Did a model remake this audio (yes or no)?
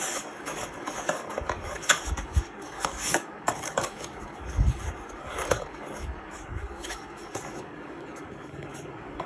yes